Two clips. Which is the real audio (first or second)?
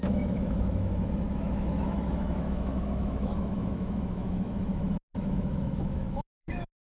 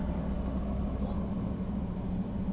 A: second